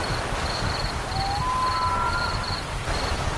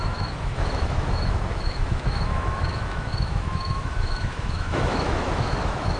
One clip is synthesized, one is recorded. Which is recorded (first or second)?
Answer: first